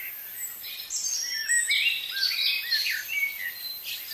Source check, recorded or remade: recorded